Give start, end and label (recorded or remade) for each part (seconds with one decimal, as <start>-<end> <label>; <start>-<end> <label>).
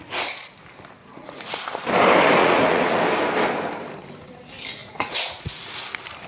0.0-1.0 recorded; 1.0-1.6 remade; 1.6-2.4 recorded; 2.4-3.0 remade; 3.0-4.8 recorded; 4.8-5.8 remade; 5.8-6.3 recorded